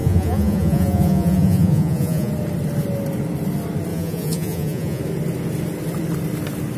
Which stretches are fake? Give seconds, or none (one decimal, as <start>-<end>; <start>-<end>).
0.0-2.3; 3.9-5.0